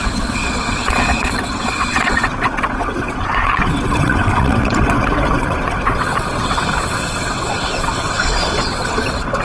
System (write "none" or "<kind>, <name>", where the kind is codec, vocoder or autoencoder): vocoder, WaveNeXt